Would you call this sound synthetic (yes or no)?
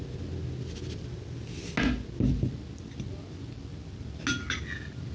no